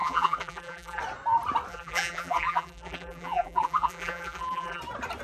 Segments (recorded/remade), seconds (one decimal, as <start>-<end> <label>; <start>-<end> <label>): 0.0-1.0 remade; 1.0-1.7 recorded; 1.7-4.8 remade; 4.8-5.2 recorded